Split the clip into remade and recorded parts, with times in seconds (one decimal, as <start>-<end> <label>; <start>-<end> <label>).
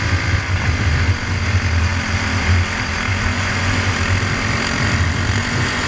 0.0-3.1 recorded; 3.1-3.9 remade; 3.9-5.4 recorded; 5.4-5.9 remade